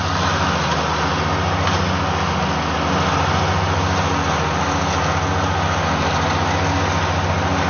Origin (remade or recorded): recorded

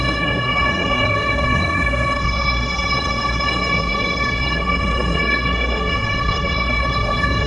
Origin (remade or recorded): remade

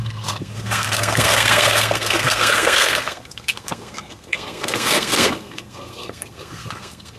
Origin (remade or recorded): remade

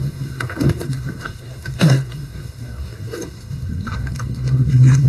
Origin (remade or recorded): remade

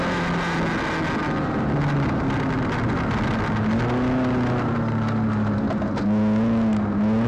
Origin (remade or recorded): recorded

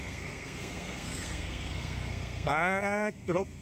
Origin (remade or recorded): remade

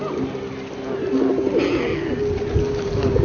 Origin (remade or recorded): recorded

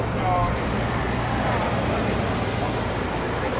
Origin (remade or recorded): recorded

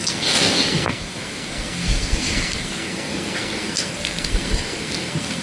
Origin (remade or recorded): remade